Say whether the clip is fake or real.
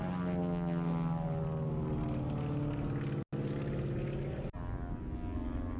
real